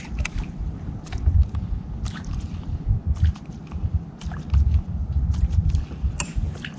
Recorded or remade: recorded